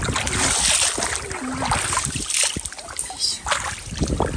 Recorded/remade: recorded